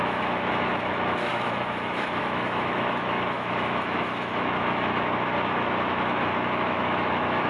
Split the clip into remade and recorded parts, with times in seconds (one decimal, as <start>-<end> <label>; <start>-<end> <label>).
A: 0.0-7.5 remade